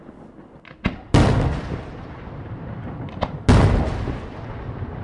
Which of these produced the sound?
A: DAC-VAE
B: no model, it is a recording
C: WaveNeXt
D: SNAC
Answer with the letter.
B